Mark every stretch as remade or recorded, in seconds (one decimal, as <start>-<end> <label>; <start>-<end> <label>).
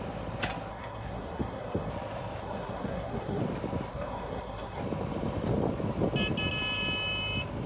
0.0-0.7 recorded; 0.7-1.9 remade; 1.9-2.4 recorded; 2.4-3.4 remade; 3.4-3.9 recorded; 3.9-4.8 remade; 4.8-7.7 recorded